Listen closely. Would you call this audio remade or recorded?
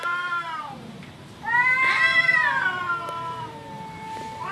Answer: remade